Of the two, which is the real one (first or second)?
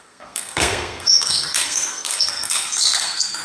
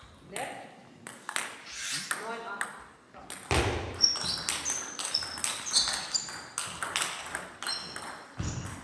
second